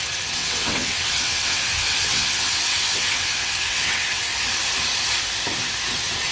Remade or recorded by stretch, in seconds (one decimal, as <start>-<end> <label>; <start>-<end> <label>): 0.0-0.4 recorded; 0.4-4.2 remade; 4.2-6.3 recorded